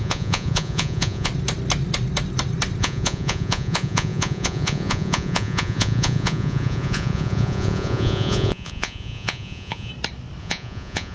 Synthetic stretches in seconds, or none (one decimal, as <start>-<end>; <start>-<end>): 0.0-1.3; 2.8-9.9; 10.4-11.1